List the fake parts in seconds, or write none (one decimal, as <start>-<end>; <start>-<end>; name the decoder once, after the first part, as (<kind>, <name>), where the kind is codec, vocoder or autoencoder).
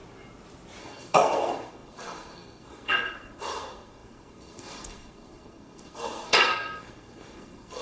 0.8-7.8 (codec, SNAC)